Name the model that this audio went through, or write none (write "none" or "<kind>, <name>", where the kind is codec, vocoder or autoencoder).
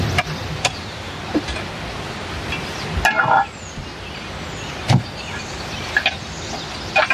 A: none